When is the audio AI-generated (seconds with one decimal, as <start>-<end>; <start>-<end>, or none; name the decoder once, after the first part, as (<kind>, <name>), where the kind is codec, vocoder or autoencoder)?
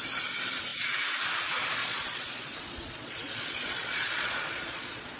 1.8-5.2 (vocoder, Vocos)